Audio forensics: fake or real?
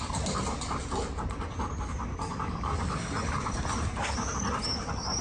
real